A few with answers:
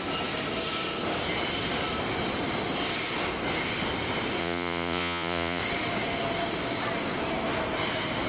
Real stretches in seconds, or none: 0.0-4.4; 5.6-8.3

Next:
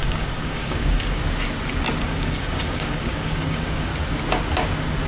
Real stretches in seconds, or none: 1.2-2.0; 3.9-5.1

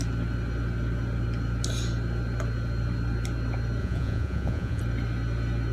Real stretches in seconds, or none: 0.0-3.8; 4.8-5.7

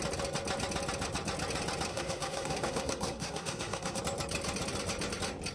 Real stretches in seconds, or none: 0.0-1.9; 4.0-5.5

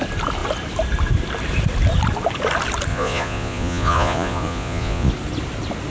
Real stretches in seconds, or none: 0.0-2.9; 5.1-5.9